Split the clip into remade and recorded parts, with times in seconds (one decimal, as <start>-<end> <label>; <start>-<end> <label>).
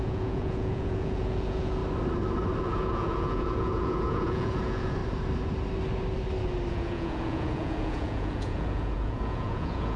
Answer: 0.0-1.8 remade; 1.8-2.6 recorded; 2.6-5.0 remade; 5.0-6.7 recorded; 6.7-10.0 remade